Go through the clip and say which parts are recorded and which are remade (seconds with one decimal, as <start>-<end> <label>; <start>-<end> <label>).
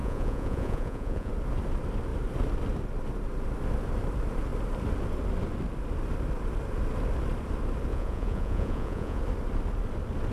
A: 0.0-1.3 remade; 1.3-7.9 recorded; 7.9-9.2 remade; 9.2-10.3 recorded